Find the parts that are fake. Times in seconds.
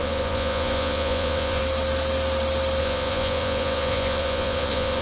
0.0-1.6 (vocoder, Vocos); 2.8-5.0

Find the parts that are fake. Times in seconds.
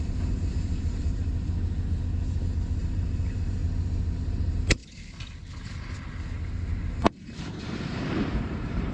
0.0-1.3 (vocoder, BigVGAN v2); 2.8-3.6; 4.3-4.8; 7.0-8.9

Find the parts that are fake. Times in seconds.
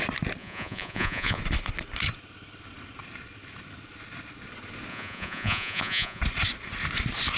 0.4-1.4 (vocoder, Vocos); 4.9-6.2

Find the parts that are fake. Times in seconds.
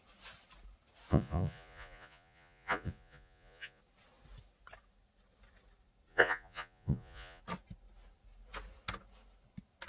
1.1-3.8 (vocoder, Vocos); 6.1-7.4